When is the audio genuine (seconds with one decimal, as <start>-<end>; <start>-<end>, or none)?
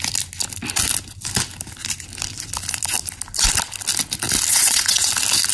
0.0-4.5; 5.1-5.5